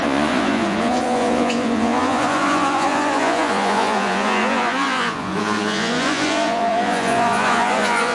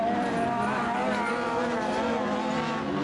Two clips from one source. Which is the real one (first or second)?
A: second